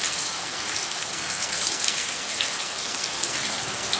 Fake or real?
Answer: fake